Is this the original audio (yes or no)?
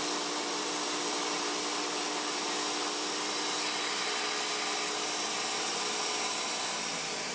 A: yes